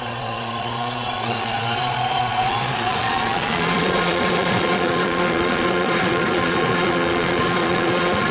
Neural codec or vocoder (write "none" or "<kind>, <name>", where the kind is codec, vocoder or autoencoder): vocoder, Vocos